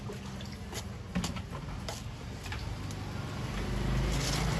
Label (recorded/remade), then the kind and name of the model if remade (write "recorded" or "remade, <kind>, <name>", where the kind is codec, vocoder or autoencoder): recorded